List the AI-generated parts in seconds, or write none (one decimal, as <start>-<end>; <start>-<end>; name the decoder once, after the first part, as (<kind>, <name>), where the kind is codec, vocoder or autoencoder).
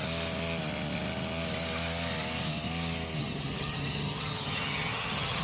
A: 3.2-5.4 (vocoder, HiFi-GAN)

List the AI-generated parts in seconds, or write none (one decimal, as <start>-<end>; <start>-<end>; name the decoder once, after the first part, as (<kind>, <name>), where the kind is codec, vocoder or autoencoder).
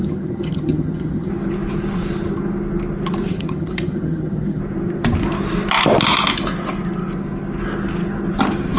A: 0.0-1.3 (vocoder, HiFi-GAN); 3.3-4.6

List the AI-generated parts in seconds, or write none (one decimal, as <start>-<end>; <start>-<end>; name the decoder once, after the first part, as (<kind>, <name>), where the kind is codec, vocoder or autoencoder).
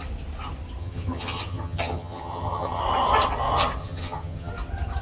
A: 0.8-2.8 (vocoder, HiFi-GAN); 3.8-4.5